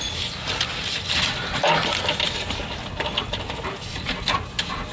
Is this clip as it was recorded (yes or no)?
yes